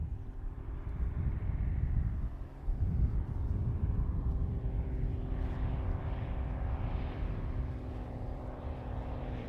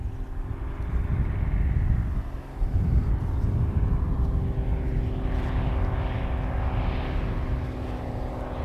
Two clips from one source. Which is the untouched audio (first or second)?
second